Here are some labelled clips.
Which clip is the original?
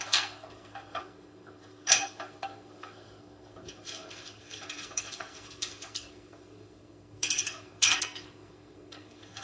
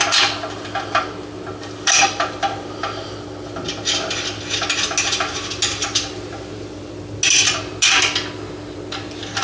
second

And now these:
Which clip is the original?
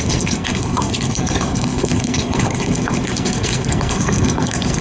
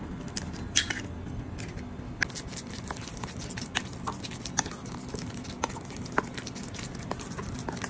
second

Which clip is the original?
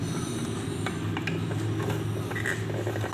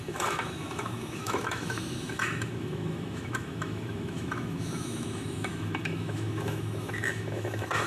first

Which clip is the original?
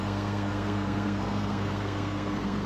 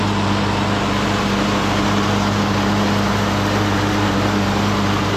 second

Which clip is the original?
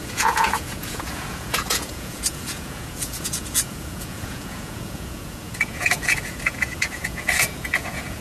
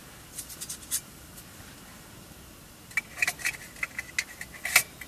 second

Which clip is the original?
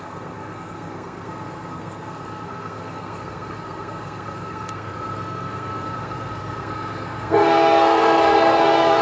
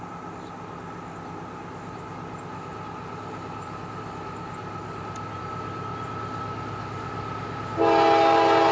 second